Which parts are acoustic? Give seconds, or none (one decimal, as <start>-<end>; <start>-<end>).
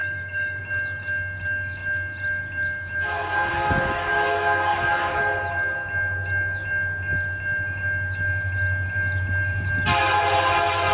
0.6-3.5; 5.2-10.9